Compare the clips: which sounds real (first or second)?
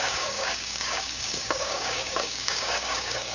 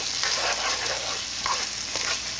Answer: second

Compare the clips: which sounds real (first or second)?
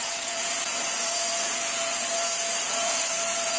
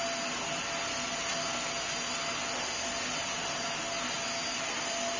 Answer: second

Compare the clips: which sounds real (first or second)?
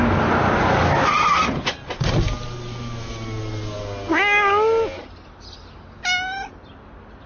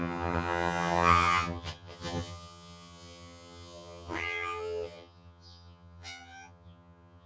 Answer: first